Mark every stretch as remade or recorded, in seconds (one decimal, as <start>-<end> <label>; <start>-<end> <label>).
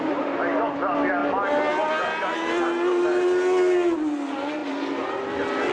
0.0-5.7 recorded